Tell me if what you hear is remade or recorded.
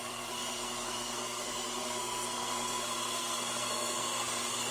remade